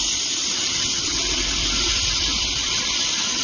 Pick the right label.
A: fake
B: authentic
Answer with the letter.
B